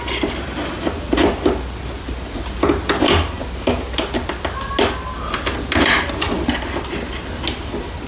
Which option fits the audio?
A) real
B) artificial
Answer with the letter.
A